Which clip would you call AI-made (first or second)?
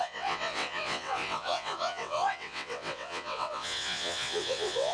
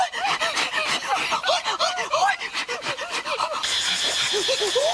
first